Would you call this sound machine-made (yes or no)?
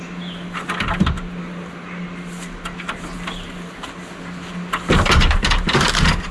no